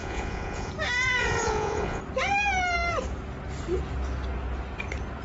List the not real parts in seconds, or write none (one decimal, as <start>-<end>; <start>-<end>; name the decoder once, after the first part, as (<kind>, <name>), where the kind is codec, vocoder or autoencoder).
0.0-0.7 (vocoder, Vocos); 1.2-2.0